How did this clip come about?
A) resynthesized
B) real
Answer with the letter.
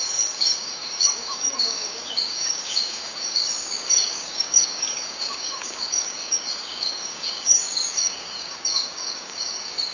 A